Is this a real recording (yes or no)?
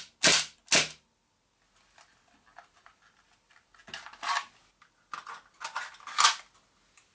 yes